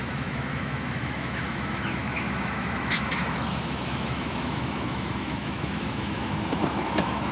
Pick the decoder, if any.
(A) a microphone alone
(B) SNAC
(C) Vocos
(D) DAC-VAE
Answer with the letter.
D